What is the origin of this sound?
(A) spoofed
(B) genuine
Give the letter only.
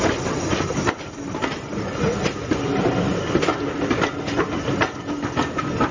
B